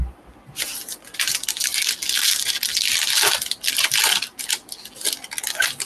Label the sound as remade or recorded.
recorded